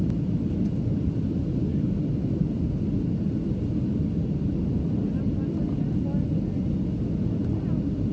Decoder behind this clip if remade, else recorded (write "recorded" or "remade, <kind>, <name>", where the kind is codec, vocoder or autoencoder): recorded